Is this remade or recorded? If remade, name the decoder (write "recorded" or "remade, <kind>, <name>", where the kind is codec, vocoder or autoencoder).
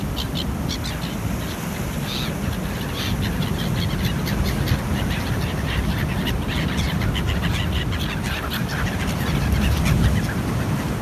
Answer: recorded